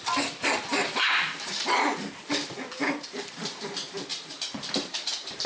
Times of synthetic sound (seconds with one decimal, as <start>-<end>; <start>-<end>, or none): 0.7-3.3; 4.1-5.5